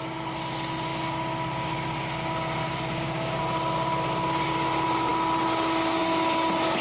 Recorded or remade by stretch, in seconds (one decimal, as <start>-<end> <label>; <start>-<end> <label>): 0.0-2.6 recorded; 2.6-3.4 remade; 3.4-6.8 recorded